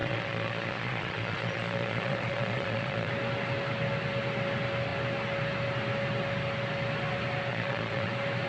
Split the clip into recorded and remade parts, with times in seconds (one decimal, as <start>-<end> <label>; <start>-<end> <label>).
0.0-3.1 remade; 3.1-7.5 recorded; 7.5-8.1 remade; 8.1-8.5 recorded

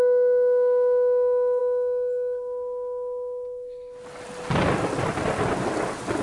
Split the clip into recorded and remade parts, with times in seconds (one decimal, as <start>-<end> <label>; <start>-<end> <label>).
0.0-6.2 recorded